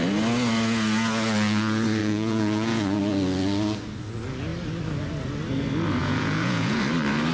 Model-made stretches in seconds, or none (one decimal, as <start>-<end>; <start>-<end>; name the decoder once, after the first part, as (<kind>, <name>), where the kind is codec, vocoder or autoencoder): 2.0-3.0 (vocoder, Vocos); 6.0-6.8